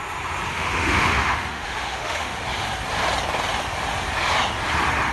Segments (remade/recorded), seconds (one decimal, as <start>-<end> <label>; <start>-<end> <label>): 0.0-0.5 recorded; 0.5-2.4 remade; 2.4-5.1 recorded